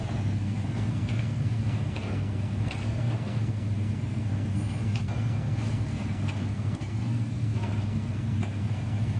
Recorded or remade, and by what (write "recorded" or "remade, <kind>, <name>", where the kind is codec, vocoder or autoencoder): remade, codec, SNAC